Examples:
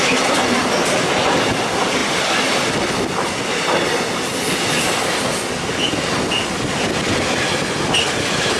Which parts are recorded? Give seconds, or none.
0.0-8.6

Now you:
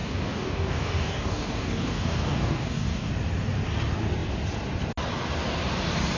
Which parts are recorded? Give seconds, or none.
3.1-6.2

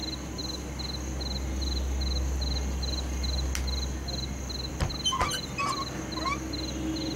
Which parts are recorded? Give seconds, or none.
0.0-7.2